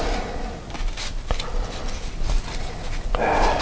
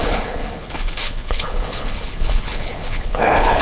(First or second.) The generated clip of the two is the second